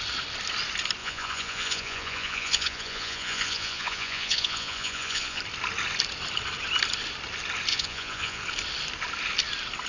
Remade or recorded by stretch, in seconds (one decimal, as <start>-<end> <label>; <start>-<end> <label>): 0.0-1.0 recorded; 1.0-5.4 remade; 5.4-7.7 recorded; 7.7-8.4 remade; 8.4-9.9 recorded